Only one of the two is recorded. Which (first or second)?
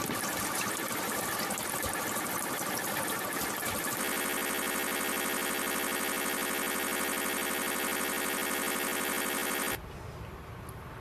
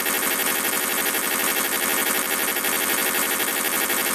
first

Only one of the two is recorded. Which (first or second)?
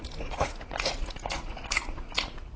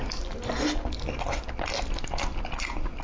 second